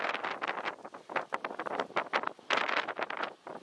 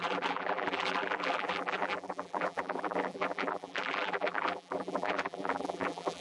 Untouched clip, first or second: first